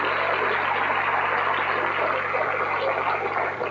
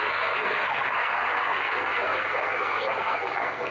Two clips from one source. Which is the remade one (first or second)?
second